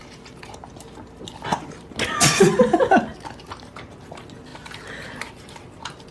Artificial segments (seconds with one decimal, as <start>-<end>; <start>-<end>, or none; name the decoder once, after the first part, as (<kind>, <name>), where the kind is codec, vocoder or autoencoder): none